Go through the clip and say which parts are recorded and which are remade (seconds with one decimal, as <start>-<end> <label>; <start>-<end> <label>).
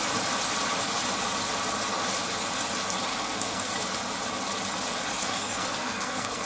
0.0-3.1 recorded; 3.1-3.7 remade; 3.7-5.2 recorded; 5.2-6.5 remade